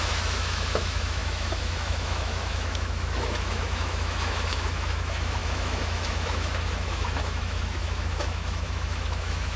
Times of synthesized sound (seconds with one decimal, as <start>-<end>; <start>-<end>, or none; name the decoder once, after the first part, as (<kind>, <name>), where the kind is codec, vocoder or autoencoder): 0.0-9.6 (autoencoder, DAC-VAE)